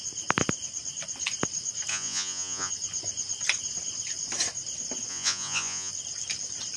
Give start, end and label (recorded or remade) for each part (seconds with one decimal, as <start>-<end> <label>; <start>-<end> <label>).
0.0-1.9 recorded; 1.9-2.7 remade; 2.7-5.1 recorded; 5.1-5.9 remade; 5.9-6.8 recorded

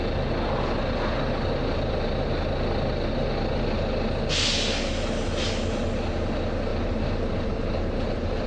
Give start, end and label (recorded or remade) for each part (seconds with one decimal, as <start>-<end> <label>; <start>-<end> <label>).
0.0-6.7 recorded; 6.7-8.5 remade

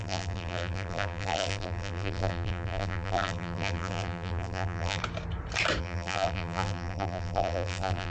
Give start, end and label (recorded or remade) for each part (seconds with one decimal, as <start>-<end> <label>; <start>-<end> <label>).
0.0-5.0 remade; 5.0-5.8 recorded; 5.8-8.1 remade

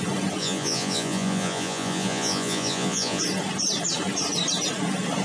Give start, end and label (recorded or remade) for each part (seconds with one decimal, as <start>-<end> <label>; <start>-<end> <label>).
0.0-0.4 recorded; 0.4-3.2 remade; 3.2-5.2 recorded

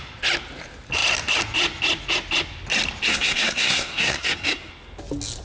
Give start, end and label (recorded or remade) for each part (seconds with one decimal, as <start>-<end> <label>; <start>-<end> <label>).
0.0-3.1 recorded; 3.1-4.7 remade; 4.7-5.4 recorded

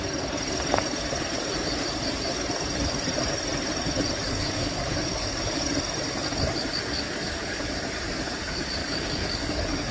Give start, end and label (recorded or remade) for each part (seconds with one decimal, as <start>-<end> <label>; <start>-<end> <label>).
0.0-4.2 recorded; 4.2-5.7 remade; 5.7-6.9 recorded; 6.9-7.6 remade; 7.6-8.8 recorded; 8.8-9.9 remade

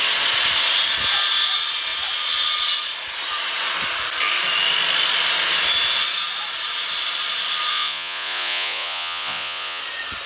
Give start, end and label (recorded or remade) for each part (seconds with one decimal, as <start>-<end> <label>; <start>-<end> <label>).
0.0-7.7 recorded; 7.7-9.8 remade; 9.8-10.3 recorded

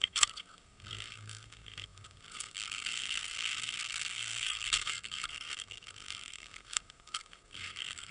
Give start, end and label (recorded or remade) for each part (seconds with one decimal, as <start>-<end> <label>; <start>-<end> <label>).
0.0-8.1 remade